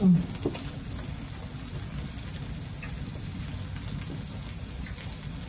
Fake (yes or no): no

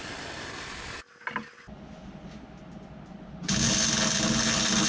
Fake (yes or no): no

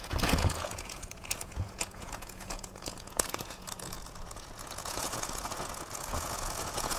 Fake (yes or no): yes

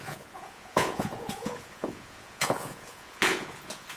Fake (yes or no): yes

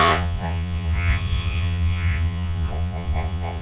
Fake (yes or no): yes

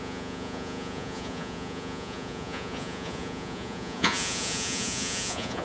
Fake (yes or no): yes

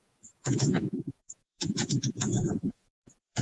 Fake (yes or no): yes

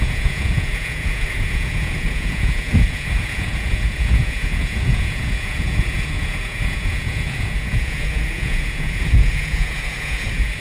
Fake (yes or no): yes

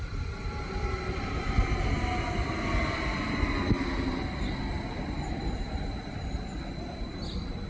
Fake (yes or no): no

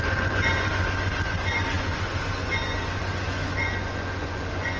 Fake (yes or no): yes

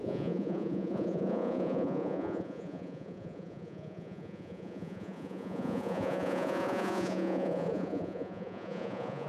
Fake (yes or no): yes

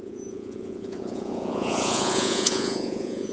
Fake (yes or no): yes